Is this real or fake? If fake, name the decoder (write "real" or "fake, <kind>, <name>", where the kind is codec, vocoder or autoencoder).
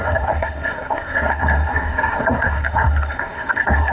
fake, codec, SNAC